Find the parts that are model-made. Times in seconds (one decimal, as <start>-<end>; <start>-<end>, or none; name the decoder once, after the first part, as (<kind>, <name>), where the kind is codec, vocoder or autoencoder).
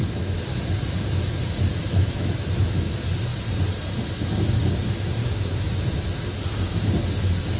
1.7-2.9 (autoencoder, DAC-VAE); 5.2-5.7